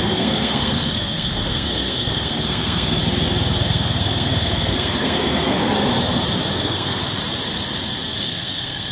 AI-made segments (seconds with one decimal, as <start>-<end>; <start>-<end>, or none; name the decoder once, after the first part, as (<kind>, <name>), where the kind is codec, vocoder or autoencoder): 0.0-3.0 (codec, SNAC); 3.7-5.9; 6.6-7.0; 8.2-8.9